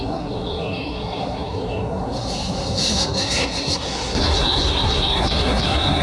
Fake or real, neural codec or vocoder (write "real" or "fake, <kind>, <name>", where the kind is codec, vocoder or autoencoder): fake, codec, SNAC